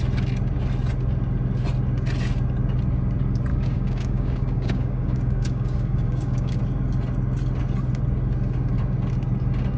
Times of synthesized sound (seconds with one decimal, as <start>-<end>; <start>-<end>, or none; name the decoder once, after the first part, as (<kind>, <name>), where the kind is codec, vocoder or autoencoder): 3.5-6.6 (codec, DAC)